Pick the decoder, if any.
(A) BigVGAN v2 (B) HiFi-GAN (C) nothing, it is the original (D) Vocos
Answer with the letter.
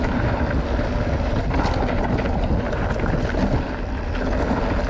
C